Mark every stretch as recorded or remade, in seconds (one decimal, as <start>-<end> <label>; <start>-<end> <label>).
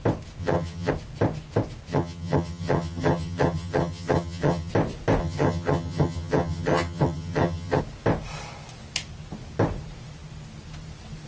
0.0-0.4 recorded; 0.4-0.9 remade; 0.9-1.9 recorded; 1.9-4.7 remade; 4.7-5.2 recorded; 5.2-7.8 remade; 7.8-11.3 recorded